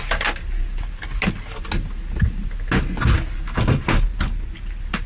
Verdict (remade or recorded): recorded